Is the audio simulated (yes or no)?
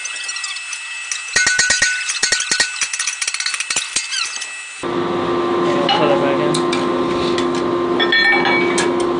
no